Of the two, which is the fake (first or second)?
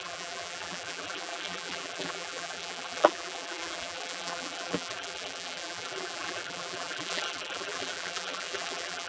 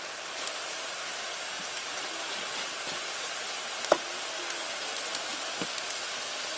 first